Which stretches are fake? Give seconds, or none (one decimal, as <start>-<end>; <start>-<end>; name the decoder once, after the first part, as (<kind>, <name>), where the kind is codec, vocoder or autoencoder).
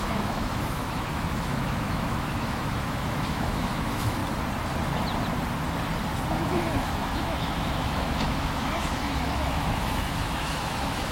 0.0-4.2 (autoencoder, DAC-VAE); 6.3-11.1